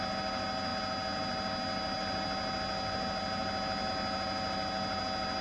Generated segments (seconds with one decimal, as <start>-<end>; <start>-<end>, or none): none